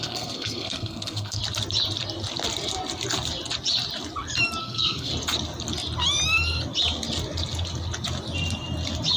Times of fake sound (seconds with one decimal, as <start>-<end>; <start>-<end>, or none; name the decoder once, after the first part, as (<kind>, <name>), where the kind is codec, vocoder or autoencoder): 0.0-1.4 (codec, SNAC); 4.6-5.1